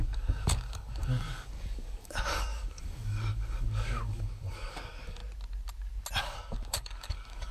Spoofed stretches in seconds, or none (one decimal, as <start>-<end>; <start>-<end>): 0.0-5.2; 6.2-7.5